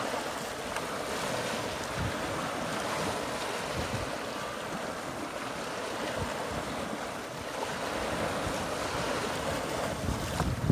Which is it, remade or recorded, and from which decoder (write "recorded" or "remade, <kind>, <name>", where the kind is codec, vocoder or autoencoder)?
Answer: recorded